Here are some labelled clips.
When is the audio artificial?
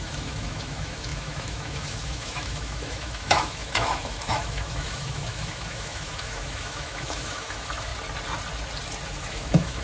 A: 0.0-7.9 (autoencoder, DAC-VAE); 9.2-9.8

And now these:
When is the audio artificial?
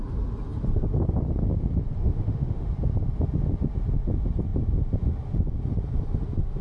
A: 2.0-2.7 (autoencoder, DAC-VAE)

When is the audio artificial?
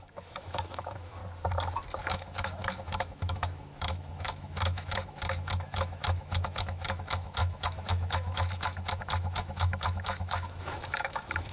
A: 0.0-1.2 (autoencoder, DAC-VAE); 2.0-11.5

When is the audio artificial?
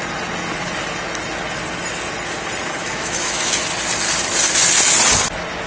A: 2.8-3.5 (autoencoder, DAC-VAE)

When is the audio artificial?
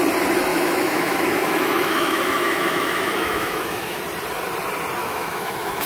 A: 0.5-4.0 (autoencoder, DAC-VAE); 5.0-5.9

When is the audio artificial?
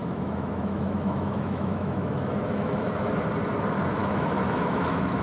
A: 0.0-3.1 (autoencoder, DAC-VAE); 4.0-5.2